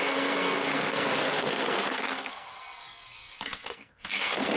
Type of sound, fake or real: fake